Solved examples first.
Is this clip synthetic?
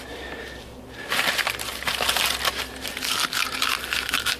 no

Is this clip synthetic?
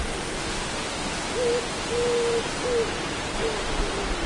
no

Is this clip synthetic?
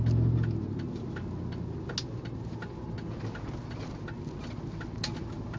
no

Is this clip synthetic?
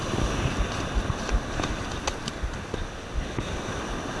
no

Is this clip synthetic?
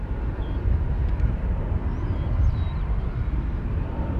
no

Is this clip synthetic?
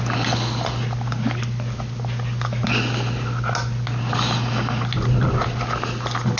no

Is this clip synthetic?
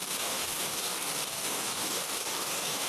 yes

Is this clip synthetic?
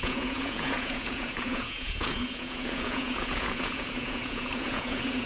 yes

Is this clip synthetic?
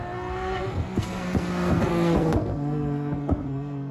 yes